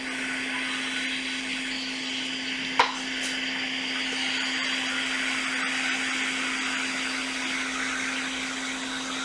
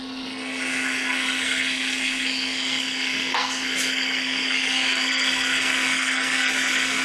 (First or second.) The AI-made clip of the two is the second